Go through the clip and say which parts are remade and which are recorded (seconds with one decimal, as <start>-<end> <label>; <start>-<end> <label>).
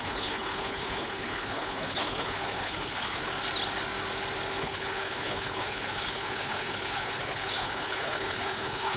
0.0-3.3 remade; 3.3-4.6 recorded; 4.6-9.0 remade